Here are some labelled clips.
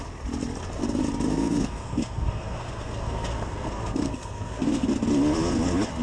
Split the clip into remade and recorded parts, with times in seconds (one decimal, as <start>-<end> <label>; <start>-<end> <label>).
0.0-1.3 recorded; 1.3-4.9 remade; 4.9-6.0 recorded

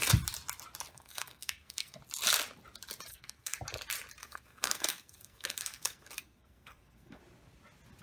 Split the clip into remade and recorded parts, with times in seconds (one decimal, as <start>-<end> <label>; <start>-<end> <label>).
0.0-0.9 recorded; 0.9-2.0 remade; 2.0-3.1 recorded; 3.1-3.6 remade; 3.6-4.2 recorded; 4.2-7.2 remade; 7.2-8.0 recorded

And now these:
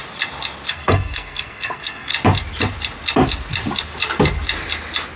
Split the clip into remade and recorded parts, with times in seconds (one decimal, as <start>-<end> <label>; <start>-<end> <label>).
0.0-0.7 recorded; 0.7-2.1 remade; 2.1-5.2 recorded

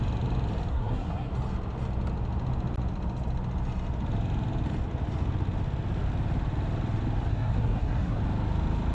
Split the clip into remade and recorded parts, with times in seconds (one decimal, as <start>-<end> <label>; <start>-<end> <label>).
0.0-0.7 recorded; 0.7-1.3 remade; 1.3-7.3 recorded; 7.3-8.2 remade; 8.2-8.9 recorded

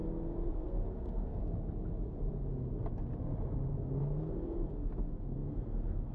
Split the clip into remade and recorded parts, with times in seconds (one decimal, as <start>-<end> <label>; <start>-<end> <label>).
0.0-0.5 recorded; 0.5-1.4 remade; 1.4-3.7 recorded; 3.7-6.1 remade

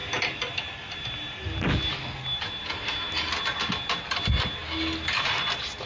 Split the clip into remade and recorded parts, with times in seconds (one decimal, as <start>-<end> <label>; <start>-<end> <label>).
0.0-5.9 recorded